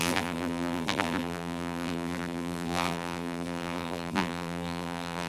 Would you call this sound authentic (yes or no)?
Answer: no